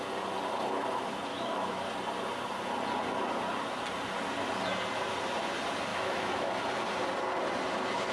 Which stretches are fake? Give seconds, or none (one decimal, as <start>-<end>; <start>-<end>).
1.3-1.8; 5.9-6.6